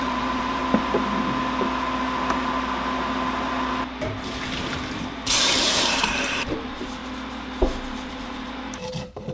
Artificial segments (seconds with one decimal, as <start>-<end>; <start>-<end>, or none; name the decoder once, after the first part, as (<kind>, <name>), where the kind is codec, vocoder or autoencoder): 0.0-0.6 (vocoder, BigVGAN v2); 5.0-7.0; 8.1-9.3